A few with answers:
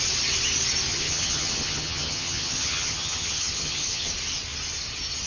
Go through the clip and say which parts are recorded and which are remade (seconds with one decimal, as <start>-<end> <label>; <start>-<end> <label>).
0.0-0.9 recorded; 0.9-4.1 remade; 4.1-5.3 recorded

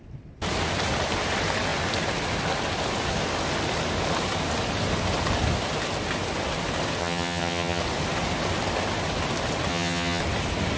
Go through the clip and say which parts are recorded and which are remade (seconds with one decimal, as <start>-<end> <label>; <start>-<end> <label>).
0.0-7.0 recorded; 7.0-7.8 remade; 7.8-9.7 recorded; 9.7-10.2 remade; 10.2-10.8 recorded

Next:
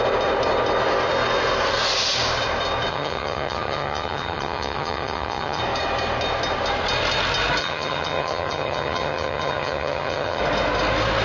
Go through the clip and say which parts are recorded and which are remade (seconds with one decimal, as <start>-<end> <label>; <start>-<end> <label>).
0.0-2.9 recorded; 2.9-5.6 remade; 5.6-7.6 recorded; 7.6-10.4 remade; 10.4-11.2 recorded

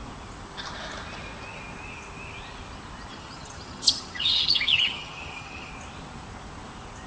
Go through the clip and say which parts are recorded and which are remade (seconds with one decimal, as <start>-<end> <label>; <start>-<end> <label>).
0.0-3.1 recorded; 3.1-5.7 remade; 5.7-7.1 recorded

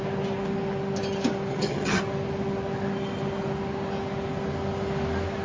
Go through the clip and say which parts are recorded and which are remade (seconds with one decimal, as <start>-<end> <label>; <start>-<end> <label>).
0.0-1.5 recorded; 1.5-2.0 remade; 2.0-5.4 recorded

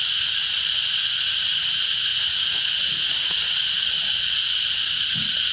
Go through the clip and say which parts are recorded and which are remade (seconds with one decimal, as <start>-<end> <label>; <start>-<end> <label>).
0.0-5.5 recorded

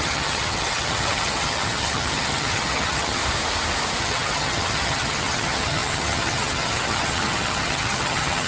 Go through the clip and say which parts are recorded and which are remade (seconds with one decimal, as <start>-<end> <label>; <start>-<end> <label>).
0.0-3.2 remade; 3.2-4.0 recorded; 4.0-8.5 remade